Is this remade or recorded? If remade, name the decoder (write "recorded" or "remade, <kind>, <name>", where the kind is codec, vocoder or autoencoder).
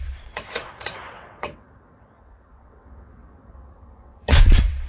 remade, vocoder, WaveNeXt